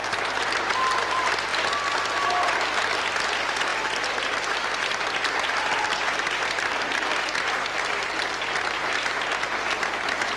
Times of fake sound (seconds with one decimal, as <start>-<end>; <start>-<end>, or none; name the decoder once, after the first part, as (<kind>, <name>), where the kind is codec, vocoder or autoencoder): none